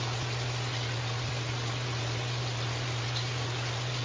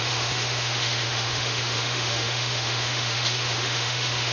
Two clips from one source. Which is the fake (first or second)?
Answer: second